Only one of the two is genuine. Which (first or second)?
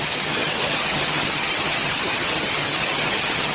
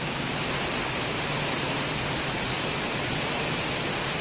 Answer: second